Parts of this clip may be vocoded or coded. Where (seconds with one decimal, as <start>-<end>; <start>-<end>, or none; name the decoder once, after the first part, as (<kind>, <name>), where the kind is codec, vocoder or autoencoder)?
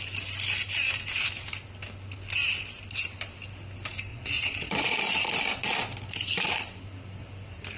4.1-5.0 (vocoder, Vocos)